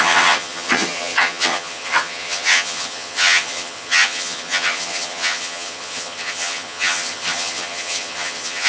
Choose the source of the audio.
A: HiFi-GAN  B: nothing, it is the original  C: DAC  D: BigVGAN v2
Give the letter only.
A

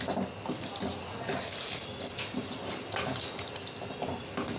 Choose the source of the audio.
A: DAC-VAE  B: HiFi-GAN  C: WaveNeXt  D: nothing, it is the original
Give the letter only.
D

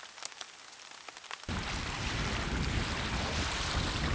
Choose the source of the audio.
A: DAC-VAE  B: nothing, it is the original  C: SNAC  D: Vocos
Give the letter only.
B